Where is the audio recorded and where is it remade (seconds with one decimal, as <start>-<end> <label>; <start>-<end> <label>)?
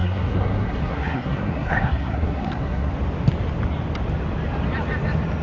0.0-2.9 remade; 2.9-5.4 recorded